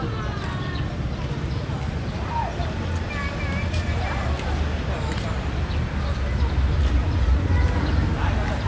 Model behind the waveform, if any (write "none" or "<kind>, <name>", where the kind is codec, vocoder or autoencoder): none